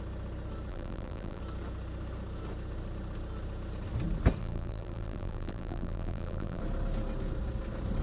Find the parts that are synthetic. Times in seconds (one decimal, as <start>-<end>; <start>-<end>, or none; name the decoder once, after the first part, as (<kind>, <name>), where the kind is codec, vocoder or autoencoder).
0.7-1.4 (vocoder, BigVGAN v2); 4.4-6.6